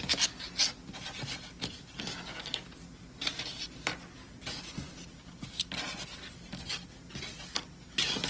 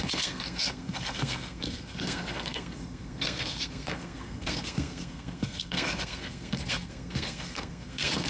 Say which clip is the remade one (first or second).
second